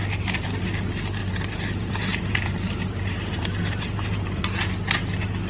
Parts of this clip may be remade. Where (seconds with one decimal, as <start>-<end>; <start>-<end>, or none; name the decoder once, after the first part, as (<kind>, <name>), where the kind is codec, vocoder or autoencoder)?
1.2-4.4 (vocoder, BigVGAN v2)